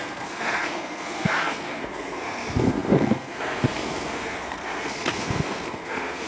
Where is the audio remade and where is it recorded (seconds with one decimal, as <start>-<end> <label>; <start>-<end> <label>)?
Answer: 0.0-6.3 remade